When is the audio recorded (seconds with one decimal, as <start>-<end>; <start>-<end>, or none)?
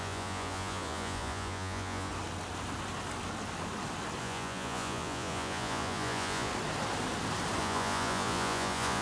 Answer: 2.1-4.2; 6.5-7.6